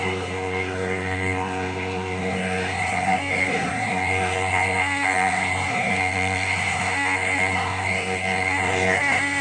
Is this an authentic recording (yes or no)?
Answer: no